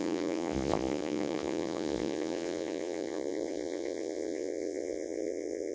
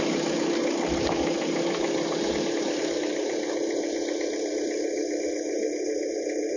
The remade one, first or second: first